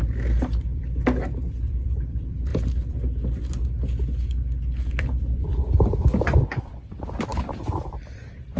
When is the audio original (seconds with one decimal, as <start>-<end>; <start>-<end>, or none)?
2.5-4.9